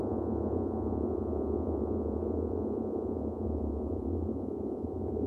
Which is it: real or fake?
fake